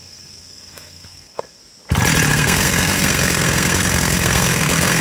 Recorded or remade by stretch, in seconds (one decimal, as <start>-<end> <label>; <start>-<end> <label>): 0.0-1.6 remade; 1.6-2.3 recorded; 2.3-5.0 remade